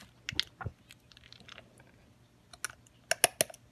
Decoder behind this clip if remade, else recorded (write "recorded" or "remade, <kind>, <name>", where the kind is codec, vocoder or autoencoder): recorded